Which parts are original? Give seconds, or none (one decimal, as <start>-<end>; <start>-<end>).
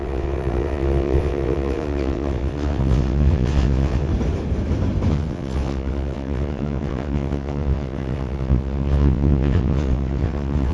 4.1-5.1